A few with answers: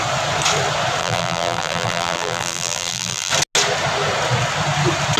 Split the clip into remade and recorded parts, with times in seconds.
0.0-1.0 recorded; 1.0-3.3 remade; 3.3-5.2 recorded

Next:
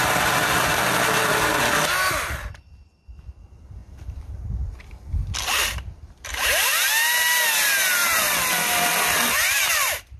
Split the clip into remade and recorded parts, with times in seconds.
0.0-3.8 recorded; 3.8-4.4 remade; 4.4-8.0 recorded; 8.0-10.2 remade

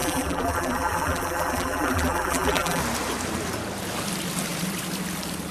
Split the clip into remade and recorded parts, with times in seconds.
0.0-2.8 remade; 2.8-5.5 recorded

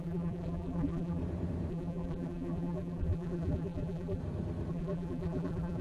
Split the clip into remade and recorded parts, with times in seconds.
0.0-1.2 remade; 1.2-1.7 recorded; 1.7-4.2 remade; 4.2-4.7 recorded; 4.7-5.8 remade